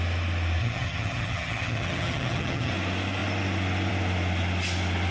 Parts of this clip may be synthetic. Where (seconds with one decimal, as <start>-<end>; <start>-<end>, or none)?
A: 0.6-2.7